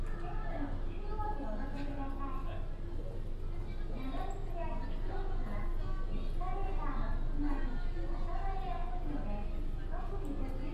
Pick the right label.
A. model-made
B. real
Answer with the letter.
B